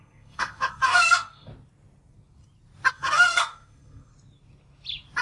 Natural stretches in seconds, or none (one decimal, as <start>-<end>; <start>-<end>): 1.5-2.9; 4.1-5.2